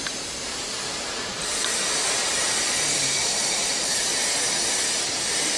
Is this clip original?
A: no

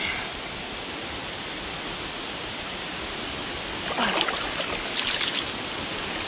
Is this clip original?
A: yes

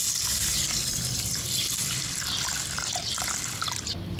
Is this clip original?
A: no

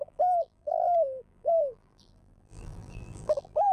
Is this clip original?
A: no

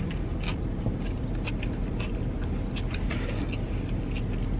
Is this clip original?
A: yes